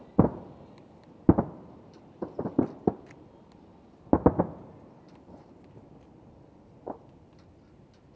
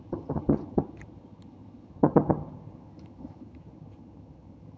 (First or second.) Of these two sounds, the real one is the first